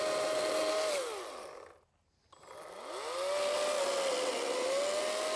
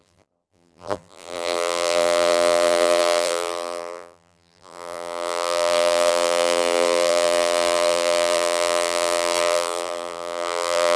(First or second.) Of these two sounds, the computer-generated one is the second